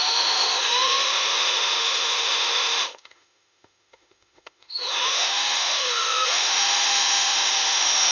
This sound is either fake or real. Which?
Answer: fake